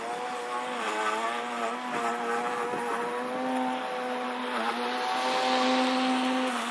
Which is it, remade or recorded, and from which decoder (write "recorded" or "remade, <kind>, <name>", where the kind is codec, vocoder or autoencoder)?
recorded